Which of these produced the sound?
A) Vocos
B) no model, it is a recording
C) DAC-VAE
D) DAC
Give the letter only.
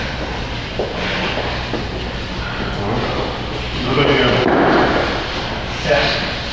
B